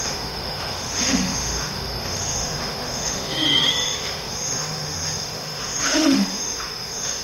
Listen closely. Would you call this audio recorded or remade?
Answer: remade